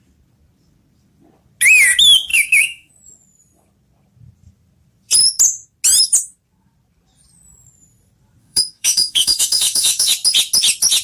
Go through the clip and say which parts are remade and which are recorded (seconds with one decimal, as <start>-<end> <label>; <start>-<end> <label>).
0.0-2.3 recorded; 2.3-2.9 remade; 2.9-8.4 recorded; 8.4-10.1 remade; 10.1-11.0 recorded